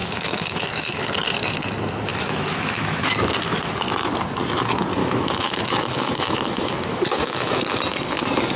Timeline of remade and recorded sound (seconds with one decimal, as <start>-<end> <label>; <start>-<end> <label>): 0.0-1.1 remade; 1.1-2.1 recorded; 2.1-3.2 remade; 3.2-5.0 recorded; 5.0-7.6 remade; 7.6-8.6 recorded